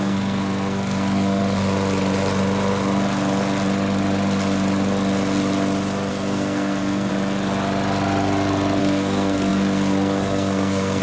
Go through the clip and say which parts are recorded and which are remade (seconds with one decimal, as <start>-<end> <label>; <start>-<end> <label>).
0.0-1.4 remade; 1.4-6.1 recorded; 6.1-7.1 remade; 7.1-8.8 recorded; 8.8-11.0 remade